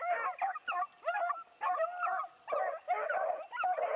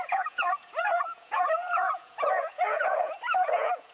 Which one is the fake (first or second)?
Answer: second